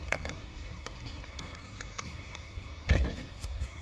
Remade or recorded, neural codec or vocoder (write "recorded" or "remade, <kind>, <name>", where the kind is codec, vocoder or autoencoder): remade, codec, SNAC